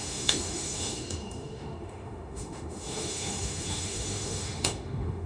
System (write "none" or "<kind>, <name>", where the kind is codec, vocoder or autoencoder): autoencoder, DAC-VAE